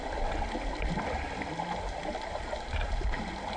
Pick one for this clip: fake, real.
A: real